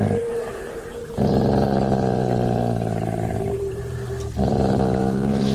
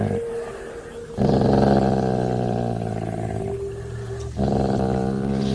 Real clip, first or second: second